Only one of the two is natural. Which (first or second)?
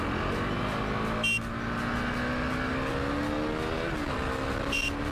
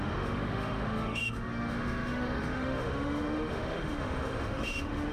first